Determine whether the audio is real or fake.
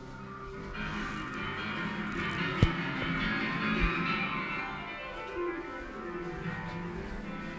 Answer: real